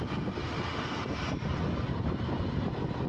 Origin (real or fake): real